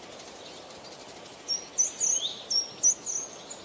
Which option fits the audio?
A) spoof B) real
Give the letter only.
B